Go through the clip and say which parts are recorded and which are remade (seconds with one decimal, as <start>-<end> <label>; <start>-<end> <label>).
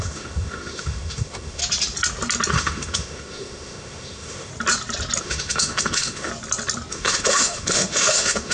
0.0-1.6 remade; 1.6-2.5 recorded; 2.5-4.5 remade; 4.5-5.2 recorded; 5.2-6.3 remade; 6.3-6.9 recorded; 6.9-8.5 remade